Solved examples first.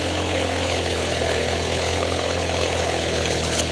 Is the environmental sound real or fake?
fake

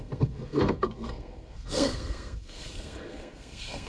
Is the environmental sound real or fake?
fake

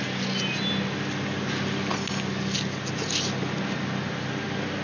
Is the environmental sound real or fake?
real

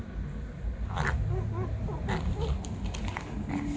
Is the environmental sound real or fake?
real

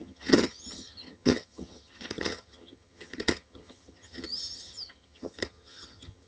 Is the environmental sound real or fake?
fake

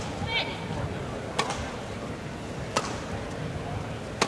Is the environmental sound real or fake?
real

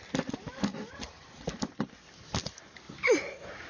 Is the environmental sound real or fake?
real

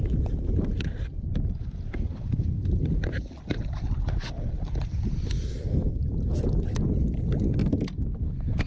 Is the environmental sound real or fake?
real